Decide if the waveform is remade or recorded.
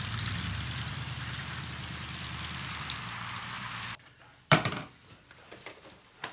remade